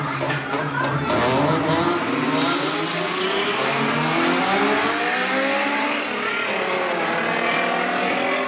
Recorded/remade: recorded